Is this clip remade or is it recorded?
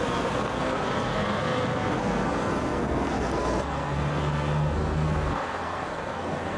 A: remade